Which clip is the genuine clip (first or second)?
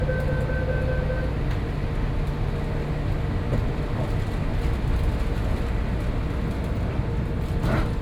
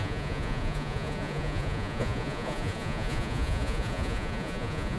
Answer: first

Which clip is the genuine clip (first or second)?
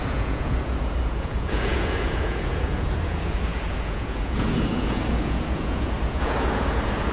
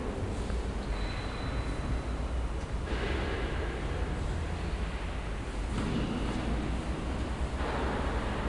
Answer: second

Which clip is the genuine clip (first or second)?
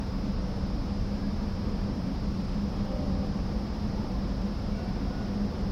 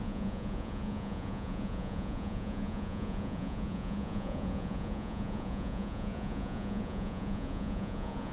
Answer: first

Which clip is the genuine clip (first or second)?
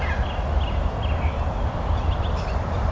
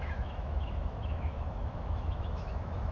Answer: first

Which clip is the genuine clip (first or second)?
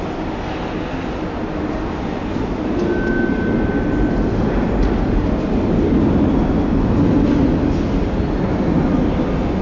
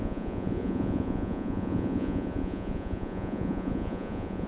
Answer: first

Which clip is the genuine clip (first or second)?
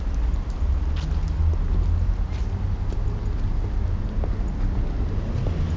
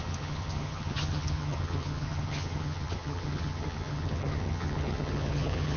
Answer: first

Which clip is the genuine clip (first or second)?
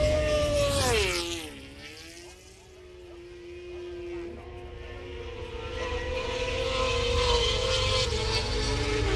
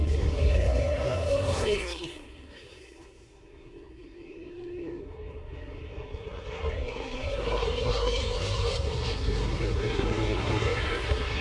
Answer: first